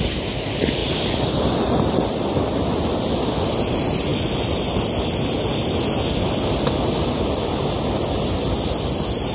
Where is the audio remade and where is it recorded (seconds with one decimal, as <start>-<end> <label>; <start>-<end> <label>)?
0.0-9.3 recorded